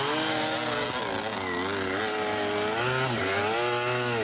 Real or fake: real